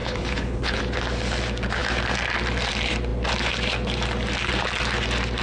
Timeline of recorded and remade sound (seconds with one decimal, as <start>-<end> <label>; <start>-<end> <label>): 0.0-0.8 remade; 0.8-5.4 recorded